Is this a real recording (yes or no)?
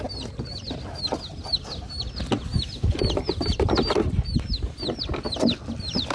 yes